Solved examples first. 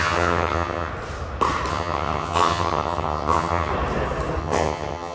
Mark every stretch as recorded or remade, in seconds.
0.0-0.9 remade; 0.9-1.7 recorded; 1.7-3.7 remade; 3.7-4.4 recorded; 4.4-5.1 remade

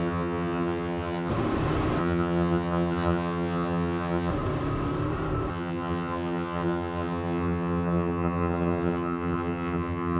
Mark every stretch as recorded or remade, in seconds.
0.0-1.3 remade; 1.3-2.0 recorded; 2.0-4.3 remade; 4.3-5.5 recorded; 5.5-10.2 remade

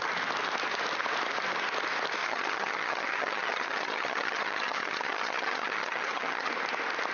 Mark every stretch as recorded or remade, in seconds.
0.0-2.2 recorded; 2.2-6.5 remade; 6.5-7.1 recorded

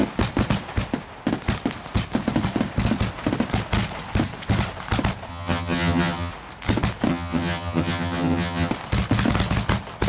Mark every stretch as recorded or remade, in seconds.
0.0-5.3 recorded; 5.3-6.3 remade; 6.3-7.1 recorded; 7.1-8.7 remade; 8.7-10.1 recorded

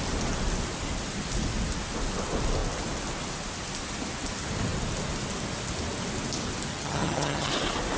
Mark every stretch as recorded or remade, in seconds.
0.0-6.7 recorded; 6.7-7.5 remade; 7.5-8.0 recorded

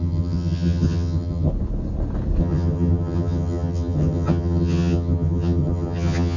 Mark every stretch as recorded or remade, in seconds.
0.0-1.5 remade; 1.5-2.4 recorded; 2.4-6.4 remade

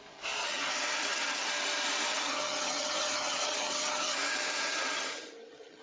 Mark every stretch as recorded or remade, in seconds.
0.0-0.4 recorded; 0.4-1.5 remade; 1.5-2.1 recorded; 2.1-5.8 remade

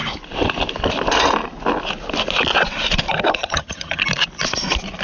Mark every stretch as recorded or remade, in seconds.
0.0-3.4 recorded; 3.4-4.0 remade; 4.0-5.0 recorded